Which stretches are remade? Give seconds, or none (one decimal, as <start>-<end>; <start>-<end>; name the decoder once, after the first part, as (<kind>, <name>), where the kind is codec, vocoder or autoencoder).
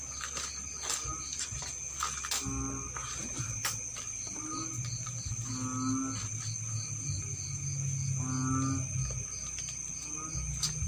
3.0-5.3 (vocoder, BigVGAN v2)